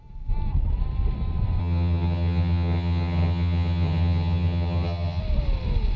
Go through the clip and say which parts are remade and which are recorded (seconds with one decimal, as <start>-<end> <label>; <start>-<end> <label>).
0.0-1.6 recorded; 1.6-5.2 remade; 5.2-6.0 recorded

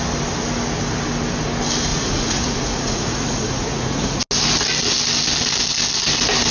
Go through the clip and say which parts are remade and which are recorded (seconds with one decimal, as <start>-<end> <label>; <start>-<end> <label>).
0.0-1.9 recorded; 1.9-4.2 remade; 4.2-6.5 recorded

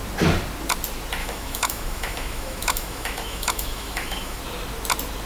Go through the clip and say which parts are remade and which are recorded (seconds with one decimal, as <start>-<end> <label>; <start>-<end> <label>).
0.0-1.2 recorded; 1.2-4.4 remade; 4.4-5.3 recorded

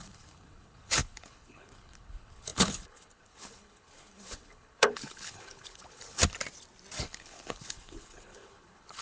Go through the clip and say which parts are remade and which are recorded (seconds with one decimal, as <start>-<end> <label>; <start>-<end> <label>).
0.0-6.2 remade; 6.2-7.0 recorded; 7.0-9.0 remade

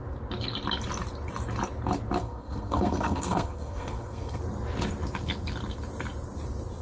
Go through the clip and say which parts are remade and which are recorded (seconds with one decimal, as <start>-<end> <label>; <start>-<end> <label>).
0.0-2.2 recorded; 2.2-4.4 remade; 4.4-6.8 recorded

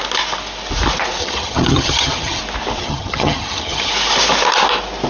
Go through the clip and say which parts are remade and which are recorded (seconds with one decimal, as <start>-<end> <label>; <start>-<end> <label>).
0.0-1.2 recorded; 1.2-2.4 remade; 2.4-2.8 recorded; 2.8-3.9 remade; 3.9-5.1 recorded

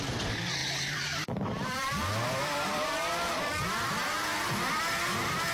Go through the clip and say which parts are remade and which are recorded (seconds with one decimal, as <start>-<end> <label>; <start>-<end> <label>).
0.0-0.6 recorded; 0.6-3.9 remade; 3.9-5.5 recorded

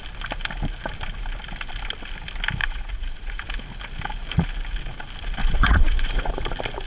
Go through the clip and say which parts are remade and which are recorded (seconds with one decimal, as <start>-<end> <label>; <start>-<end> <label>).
0.0-2.6 recorded; 2.6-3.4 remade; 3.4-5.4 recorded; 5.4-6.3 remade; 6.3-6.9 recorded